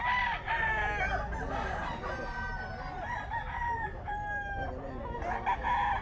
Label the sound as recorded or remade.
recorded